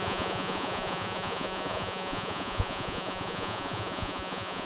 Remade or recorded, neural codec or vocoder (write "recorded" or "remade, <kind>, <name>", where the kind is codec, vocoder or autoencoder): remade, vocoder, Vocos